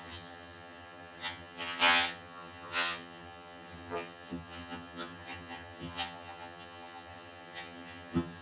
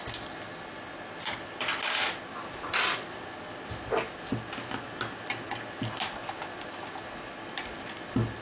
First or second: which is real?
second